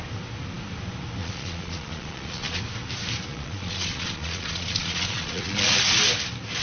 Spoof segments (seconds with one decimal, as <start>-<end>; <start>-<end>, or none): 1.2-2.6; 3.3-5.8